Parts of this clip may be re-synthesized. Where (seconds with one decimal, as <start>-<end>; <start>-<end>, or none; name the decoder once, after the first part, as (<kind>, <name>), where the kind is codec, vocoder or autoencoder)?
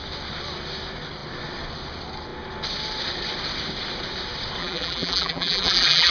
4.6-6.1 (vocoder, BigVGAN v2)